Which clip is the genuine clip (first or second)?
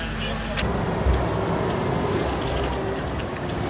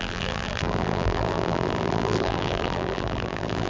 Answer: first